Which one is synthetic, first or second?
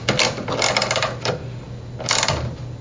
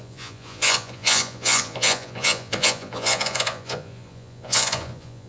second